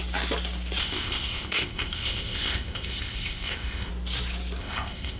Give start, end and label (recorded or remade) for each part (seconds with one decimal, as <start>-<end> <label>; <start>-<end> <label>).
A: 0.0-0.8 recorded; 0.8-3.9 remade; 3.9-4.6 recorded; 4.6-5.2 remade